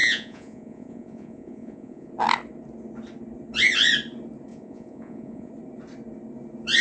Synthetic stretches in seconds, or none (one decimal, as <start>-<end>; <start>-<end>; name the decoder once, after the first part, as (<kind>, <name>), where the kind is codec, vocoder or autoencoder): 0.0-2.1 (vocoder, Vocos); 4.5-5.5